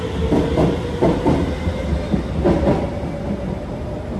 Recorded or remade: recorded